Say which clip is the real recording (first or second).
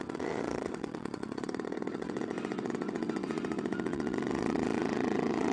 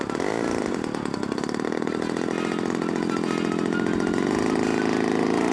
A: second